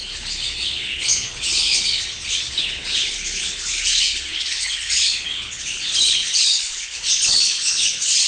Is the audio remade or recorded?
remade